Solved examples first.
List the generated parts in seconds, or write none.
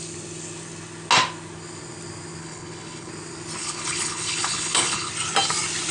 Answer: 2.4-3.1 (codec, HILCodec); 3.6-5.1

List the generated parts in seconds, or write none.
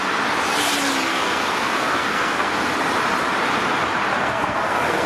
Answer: 1.1-2.5 (codec, SNAC); 4.1-5.1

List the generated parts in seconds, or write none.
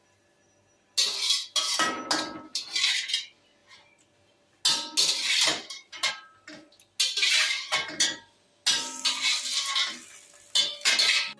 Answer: none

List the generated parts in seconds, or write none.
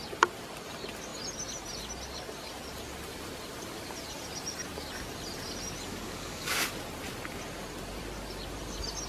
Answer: 5.9-6.7 (codec, DAC)